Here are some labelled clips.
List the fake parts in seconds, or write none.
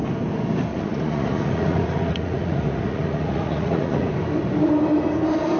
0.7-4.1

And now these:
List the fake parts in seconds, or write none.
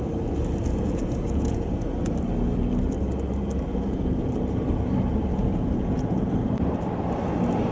0.6-1.7; 3.7-4.3; 5.3-6.3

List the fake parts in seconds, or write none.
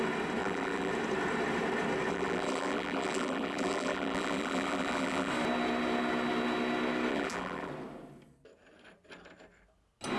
0.4-0.9; 2.1-5.3; 7.1-7.7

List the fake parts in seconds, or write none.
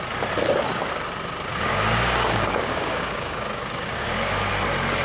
1.5-4.5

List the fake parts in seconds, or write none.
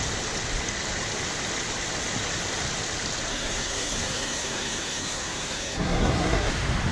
3.3-6.5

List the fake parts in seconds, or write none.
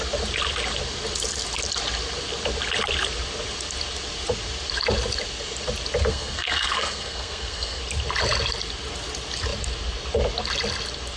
6.1-7.8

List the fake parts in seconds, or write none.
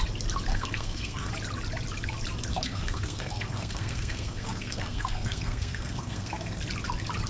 0.5-1.3; 2.5-6.6